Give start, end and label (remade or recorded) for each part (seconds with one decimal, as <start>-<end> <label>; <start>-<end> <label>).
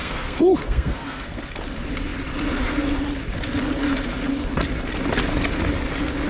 0.0-1.4 remade; 1.4-6.3 recorded